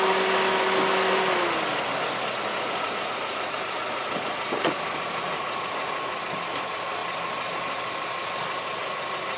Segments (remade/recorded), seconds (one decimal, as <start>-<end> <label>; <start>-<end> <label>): 0.0-2.5 recorded; 2.5-6.2 remade; 6.2-8.8 recorded; 8.8-9.4 remade